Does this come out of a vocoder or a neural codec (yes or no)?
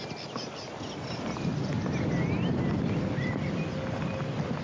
no